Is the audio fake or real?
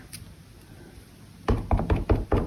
real